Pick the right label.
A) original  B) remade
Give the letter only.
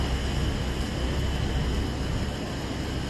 A